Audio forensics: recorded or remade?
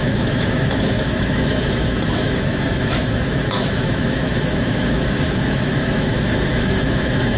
remade